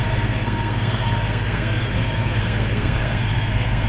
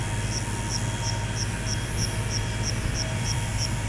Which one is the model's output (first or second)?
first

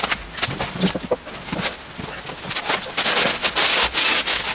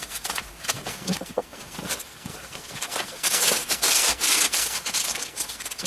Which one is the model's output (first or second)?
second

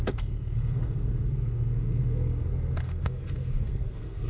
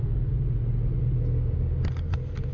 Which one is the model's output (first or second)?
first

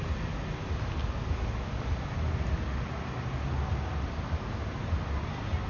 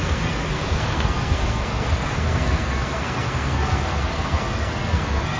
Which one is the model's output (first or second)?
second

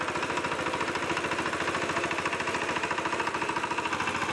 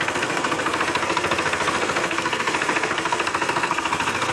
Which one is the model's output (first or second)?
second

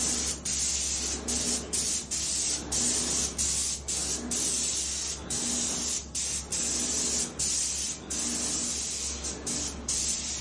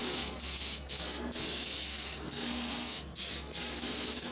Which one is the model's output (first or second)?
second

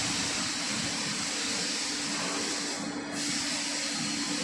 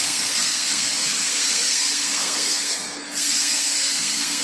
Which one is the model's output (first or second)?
second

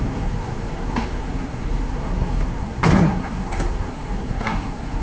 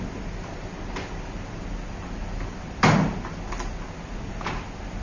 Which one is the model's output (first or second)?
first